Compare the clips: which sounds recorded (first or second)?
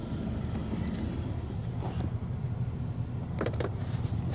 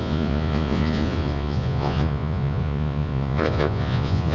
first